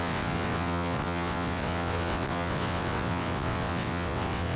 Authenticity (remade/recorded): remade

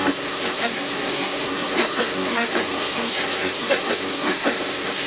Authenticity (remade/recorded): remade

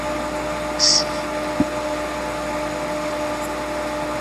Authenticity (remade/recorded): recorded